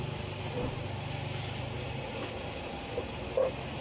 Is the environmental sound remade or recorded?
recorded